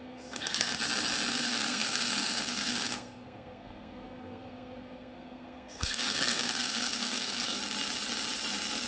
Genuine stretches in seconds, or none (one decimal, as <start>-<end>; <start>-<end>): 0.7-1.3; 7.6-8.9